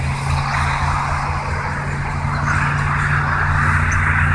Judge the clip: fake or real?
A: real